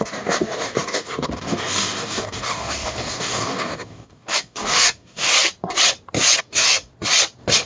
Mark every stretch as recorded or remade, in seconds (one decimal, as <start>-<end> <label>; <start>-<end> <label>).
0.0-5.3 remade; 5.3-6.4 recorded; 6.4-6.9 remade; 6.9-7.7 recorded